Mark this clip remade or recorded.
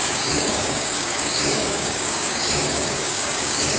remade